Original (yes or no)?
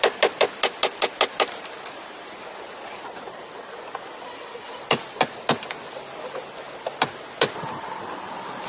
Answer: yes